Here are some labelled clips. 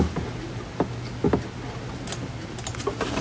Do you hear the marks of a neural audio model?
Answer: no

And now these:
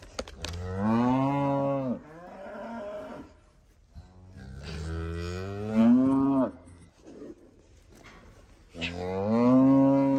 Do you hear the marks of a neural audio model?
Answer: no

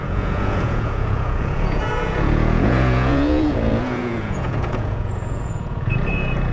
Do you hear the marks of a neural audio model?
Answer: yes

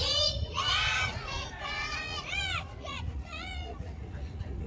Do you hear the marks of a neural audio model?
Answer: yes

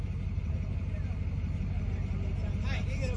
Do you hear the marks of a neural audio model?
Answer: no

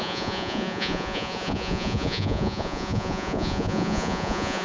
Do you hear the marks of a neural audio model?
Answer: yes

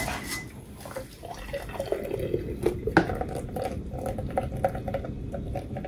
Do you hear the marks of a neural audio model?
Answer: no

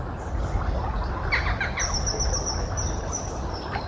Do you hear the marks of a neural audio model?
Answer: no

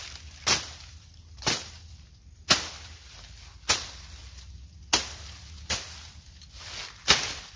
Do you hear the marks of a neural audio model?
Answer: no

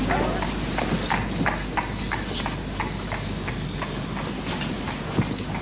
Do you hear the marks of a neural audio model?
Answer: no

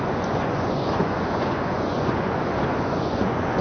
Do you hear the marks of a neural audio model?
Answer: yes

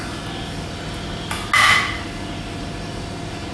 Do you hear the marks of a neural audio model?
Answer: no